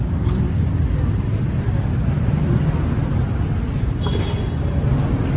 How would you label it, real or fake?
real